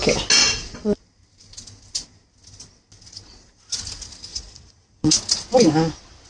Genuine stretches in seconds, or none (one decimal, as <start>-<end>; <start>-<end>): 0.0-0.4; 1.0-4.3; 5.1-6.3